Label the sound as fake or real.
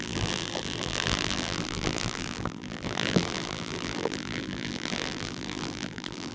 fake